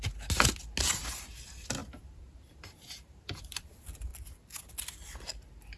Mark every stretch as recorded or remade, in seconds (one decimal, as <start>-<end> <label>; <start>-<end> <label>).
0.0-1.8 recorded; 1.8-3.6 remade; 3.6-5.8 recorded